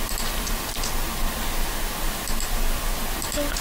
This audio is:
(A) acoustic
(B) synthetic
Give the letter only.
A